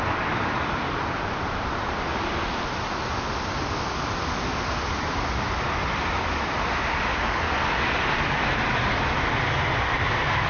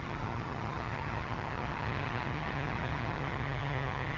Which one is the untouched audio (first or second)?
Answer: first